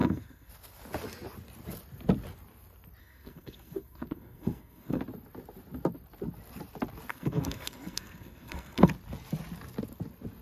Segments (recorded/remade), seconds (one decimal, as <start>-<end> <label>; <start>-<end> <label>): 0.0-0.5 remade; 0.5-3.0 recorded; 3.0-5.0 remade; 5.0-7.1 recorded; 7.1-8.9 remade; 8.9-10.4 recorded